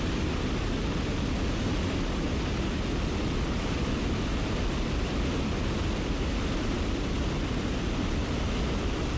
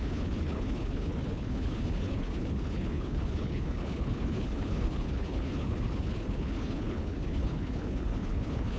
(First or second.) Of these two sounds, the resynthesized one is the second